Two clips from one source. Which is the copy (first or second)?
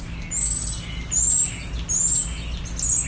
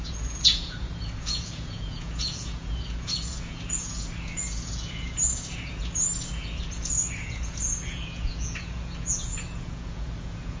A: second